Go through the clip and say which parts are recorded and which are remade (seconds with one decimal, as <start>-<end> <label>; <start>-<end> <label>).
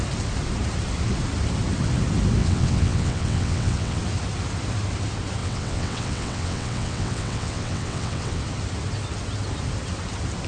0.0-2.4 recorded; 2.4-4.0 remade; 4.0-5.4 recorded; 5.4-8.4 remade; 8.4-10.5 recorded